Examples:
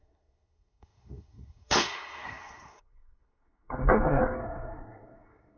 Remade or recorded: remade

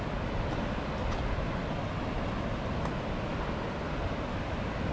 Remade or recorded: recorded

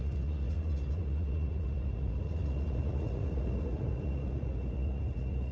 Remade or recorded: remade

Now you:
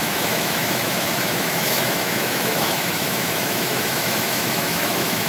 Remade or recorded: remade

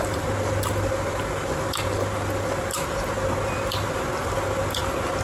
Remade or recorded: recorded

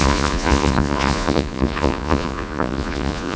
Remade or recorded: remade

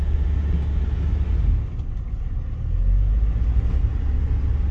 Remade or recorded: recorded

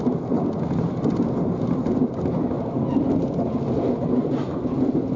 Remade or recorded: recorded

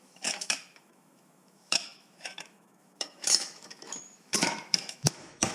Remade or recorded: remade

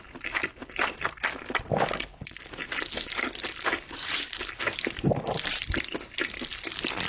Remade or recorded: recorded